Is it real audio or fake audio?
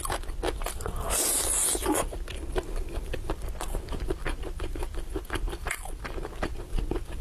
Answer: real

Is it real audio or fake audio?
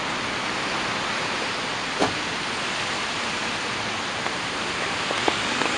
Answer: fake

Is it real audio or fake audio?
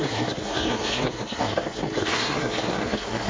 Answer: fake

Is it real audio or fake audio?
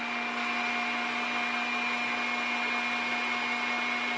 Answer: real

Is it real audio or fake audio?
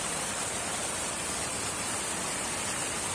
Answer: real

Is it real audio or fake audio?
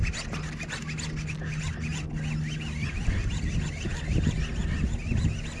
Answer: real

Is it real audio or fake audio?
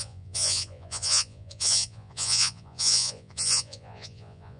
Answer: fake